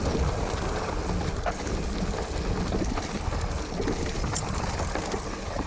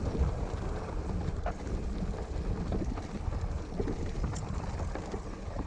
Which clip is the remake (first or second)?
second